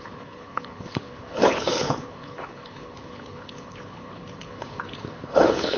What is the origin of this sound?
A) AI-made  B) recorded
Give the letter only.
A